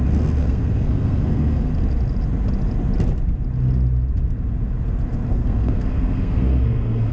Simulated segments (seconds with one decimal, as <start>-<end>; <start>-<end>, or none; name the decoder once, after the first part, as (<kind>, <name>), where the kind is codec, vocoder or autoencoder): 0.4-1.7 (codec, SNAC); 5.3-7.1

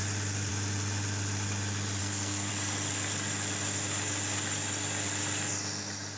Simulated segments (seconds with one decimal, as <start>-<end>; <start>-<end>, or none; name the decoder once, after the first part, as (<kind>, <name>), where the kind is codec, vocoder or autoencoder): 2.0-2.5 (codec, SNAC)

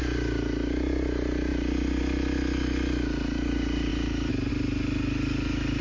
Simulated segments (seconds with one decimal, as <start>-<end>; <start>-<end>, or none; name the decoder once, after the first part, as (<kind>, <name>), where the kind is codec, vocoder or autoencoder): none

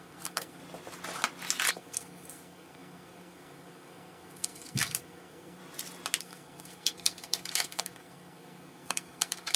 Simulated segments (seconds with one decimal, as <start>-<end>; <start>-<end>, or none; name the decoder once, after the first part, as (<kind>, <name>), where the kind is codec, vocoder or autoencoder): 0.0-0.6 (codec, SNAC); 1.7-5.6; 6.2-9.6

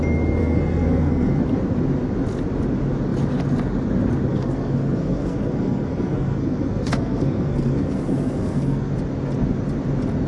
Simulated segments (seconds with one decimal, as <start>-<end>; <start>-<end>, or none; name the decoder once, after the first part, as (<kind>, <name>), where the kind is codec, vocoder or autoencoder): 0.4-1.4 (codec, SNAC); 4.3-8.9

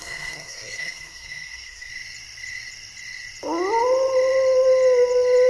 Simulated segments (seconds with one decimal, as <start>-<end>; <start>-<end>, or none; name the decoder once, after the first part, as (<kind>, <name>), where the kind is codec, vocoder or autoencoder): 0.0-1.9 (codec, SNAC)

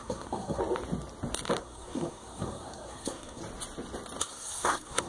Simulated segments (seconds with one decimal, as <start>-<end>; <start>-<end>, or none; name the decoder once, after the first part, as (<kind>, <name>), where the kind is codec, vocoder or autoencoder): 0.0-0.6 (codec, SNAC); 1.6-3.4; 4.2-5.1